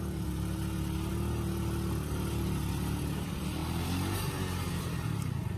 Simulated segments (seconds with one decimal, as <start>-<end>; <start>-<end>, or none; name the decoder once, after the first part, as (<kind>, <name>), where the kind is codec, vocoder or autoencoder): none